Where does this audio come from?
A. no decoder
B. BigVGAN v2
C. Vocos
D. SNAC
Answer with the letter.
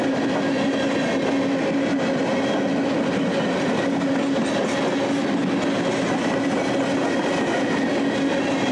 A